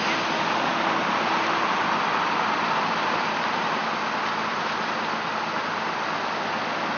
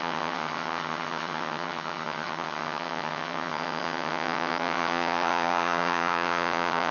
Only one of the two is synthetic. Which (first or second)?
second